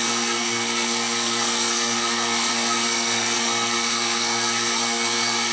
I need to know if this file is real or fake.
fake